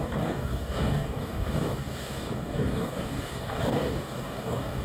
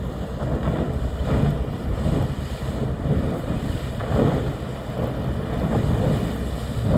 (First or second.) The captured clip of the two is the second